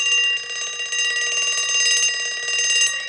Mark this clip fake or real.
real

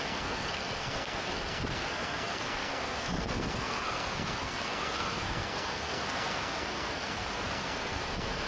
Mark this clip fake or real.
fake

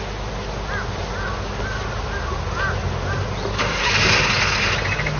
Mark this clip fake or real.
real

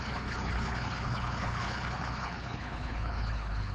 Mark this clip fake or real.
fake